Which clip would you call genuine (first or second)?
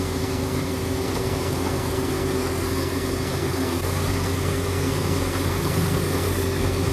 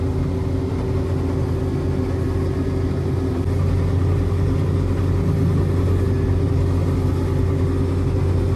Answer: second